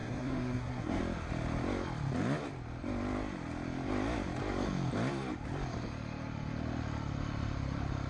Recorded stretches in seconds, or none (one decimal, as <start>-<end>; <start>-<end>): 1.0-8.1